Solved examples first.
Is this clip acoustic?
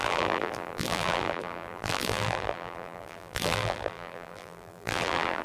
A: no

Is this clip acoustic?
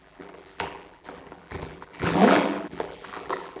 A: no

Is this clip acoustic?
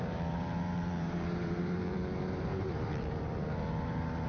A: no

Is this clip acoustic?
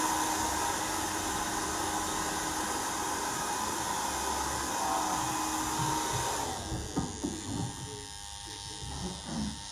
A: yes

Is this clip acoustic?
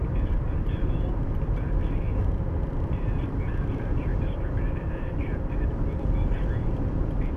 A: no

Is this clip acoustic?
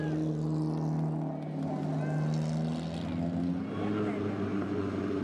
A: yes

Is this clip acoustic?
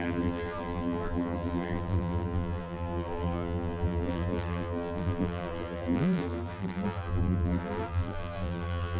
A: no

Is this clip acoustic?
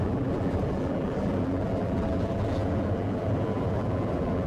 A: no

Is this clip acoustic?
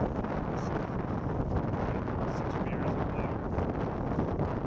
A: yes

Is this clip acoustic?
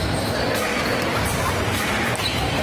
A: no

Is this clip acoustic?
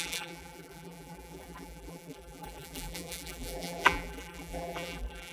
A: no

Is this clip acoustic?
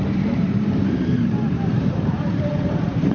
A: no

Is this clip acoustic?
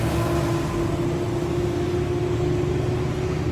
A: yes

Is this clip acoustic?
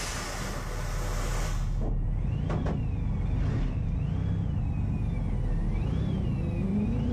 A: yes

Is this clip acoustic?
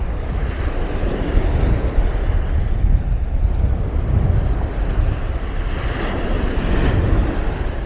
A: yes